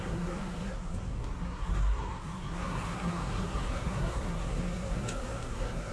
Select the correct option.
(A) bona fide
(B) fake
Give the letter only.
B